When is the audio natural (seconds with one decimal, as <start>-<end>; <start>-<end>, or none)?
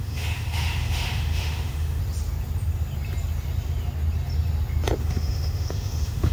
2.0-5.0